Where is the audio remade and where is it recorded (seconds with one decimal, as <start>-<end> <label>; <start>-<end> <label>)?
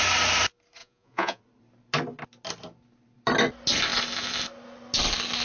0.0-0.8 recorded; 0.8-1.4 remade; 1.4-5.4 recorded